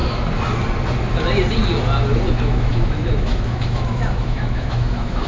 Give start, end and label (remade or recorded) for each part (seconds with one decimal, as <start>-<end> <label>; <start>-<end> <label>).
0.0-2.3 recorded; 2.3-5.3 remade